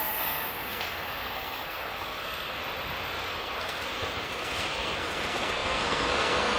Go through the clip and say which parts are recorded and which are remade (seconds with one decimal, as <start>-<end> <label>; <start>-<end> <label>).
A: 0.0-2.6 remade; 2.6-3.3 recorded; 3.3-6.6 remade